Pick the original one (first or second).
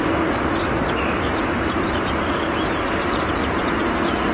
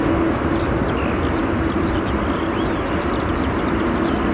second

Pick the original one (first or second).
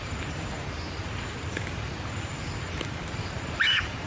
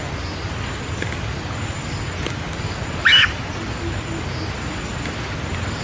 second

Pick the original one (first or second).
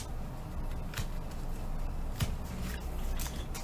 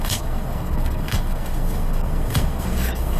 first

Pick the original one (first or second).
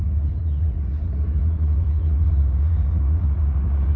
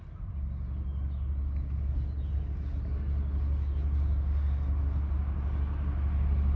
second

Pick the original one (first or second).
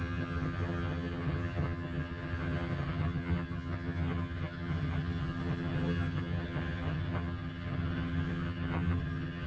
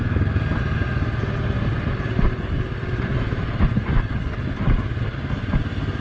second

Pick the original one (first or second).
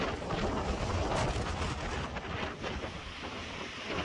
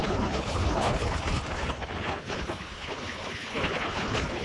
first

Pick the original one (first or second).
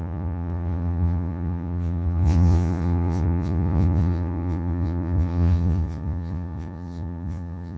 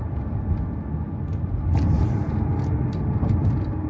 second